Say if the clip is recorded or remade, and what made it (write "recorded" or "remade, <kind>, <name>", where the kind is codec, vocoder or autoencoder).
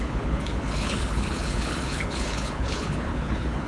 remade, codec, HILCodec